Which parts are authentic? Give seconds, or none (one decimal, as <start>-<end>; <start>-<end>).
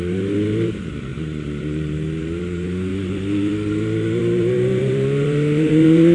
none